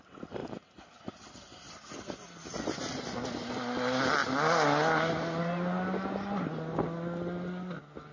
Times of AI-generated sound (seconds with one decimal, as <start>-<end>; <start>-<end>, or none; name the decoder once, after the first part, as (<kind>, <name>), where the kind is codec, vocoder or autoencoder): none